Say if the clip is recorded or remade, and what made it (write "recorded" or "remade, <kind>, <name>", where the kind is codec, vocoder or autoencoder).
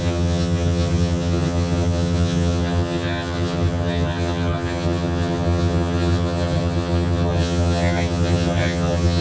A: remade, vocoder, HiFi-GAN